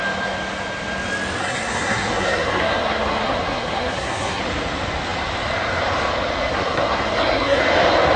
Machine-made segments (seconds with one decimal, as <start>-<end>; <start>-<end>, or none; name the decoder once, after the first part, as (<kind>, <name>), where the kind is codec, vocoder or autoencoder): 1.4-4.4 (codec, SNAC); 6.5-7.6